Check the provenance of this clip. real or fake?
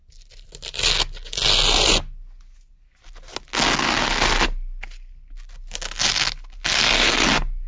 real